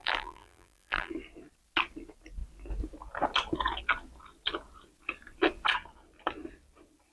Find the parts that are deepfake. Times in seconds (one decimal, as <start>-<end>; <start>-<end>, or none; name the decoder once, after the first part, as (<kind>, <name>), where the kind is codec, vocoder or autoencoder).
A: 0.0-1.1 (vocoder, BigVGAN v2)